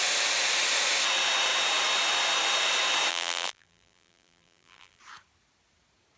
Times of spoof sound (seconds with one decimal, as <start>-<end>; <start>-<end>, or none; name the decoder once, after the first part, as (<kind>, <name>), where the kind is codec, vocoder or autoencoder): 3.1-5.0 (vocoder, BigVGAN v2)